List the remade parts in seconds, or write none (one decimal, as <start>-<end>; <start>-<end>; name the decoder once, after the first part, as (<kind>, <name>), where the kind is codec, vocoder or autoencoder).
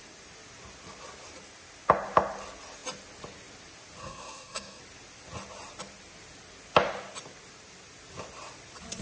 4.0-4.8 (codec, SNAC)